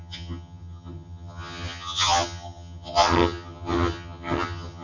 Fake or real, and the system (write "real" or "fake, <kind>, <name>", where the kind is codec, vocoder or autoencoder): fake, vocoder, HiFi-GAN